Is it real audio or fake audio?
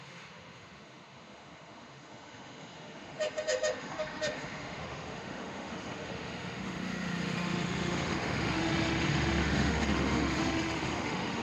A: fake